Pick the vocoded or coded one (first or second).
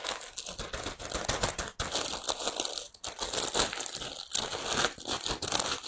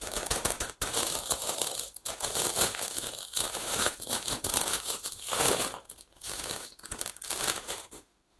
second